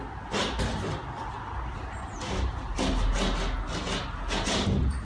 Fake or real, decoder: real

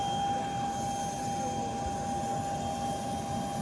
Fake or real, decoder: real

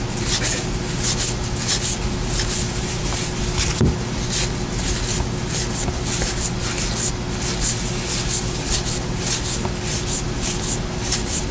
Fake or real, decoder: real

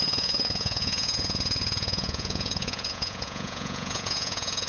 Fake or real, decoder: fake, vocoder, Vocos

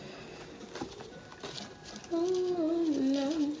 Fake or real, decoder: real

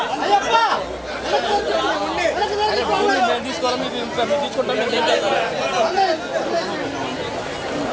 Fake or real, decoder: real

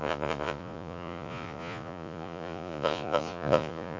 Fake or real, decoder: fake, vocoder, Vocos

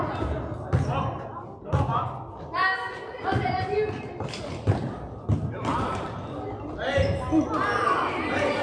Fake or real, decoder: real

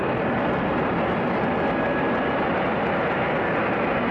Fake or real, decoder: real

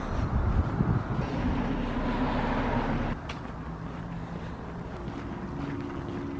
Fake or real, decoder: real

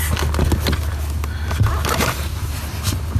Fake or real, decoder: real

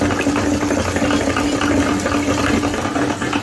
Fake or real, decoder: real